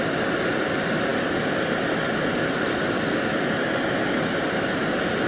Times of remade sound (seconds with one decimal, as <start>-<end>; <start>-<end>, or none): none